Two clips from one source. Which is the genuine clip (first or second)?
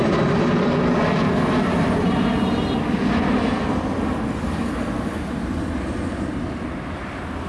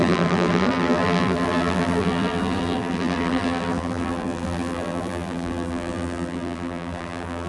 first